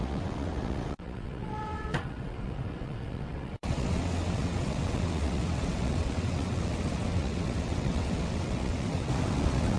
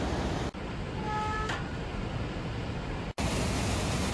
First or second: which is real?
second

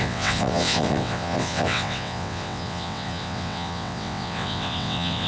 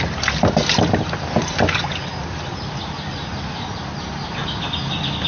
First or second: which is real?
second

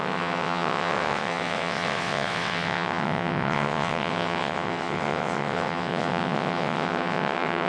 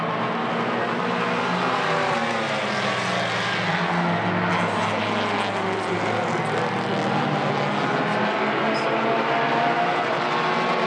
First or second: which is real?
second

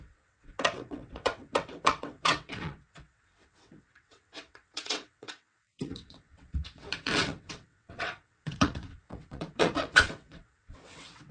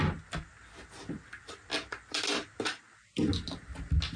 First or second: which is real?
second